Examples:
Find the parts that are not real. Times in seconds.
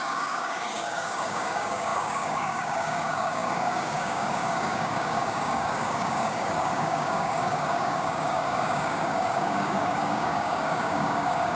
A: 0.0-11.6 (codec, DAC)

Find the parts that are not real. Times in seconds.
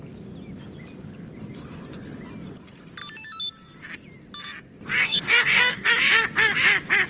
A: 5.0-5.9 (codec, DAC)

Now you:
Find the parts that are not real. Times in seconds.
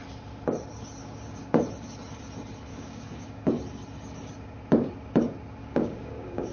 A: 1.0-1.6 (codec, DAC); 2.7-3.4; 5.6-6.5